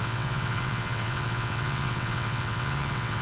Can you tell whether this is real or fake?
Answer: fake